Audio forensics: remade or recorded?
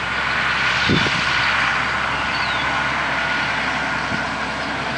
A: recorded